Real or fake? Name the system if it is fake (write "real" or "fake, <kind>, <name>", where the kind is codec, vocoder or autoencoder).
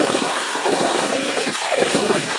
fake, codec, SNAC